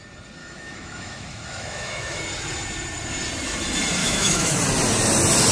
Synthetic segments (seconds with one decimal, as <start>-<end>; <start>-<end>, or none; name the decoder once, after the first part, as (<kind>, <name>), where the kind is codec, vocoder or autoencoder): 0.4-2.2 (autoencoder, DAC-VAE); 4.0-4.6

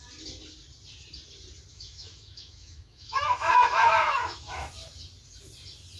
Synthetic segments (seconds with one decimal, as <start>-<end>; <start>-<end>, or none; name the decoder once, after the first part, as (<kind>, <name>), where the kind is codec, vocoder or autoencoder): 1.7-4.7 (autoencoder, DAC-VAE)

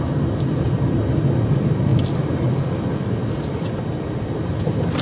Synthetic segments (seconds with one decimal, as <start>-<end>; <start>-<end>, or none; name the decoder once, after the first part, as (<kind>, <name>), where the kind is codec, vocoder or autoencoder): none

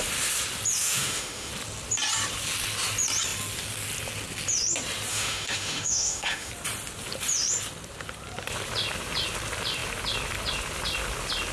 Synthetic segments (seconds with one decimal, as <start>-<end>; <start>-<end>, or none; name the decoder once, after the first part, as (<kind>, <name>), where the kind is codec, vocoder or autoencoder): 0.8-1.5 (autoencoder, DAC-VAE); 5.1-6.5

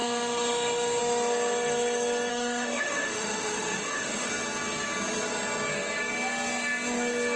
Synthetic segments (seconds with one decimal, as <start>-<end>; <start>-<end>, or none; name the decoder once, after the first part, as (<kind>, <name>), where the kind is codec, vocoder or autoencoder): 0.0-1.0 (autoencoder, DAC-VAE); 2.3-4.3

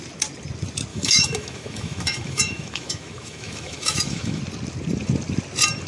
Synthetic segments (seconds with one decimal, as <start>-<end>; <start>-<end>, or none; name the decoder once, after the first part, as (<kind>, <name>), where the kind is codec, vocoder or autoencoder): 0.9-4.4 (autoencoder, DAC-VAE)

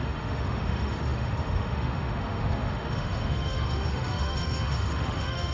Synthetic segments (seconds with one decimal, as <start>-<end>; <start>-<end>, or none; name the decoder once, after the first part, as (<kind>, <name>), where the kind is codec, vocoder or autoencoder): 0.0-5.5 (autoencoder, DAC-VAE)